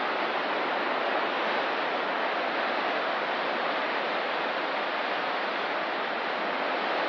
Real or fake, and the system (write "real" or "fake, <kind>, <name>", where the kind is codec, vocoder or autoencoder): real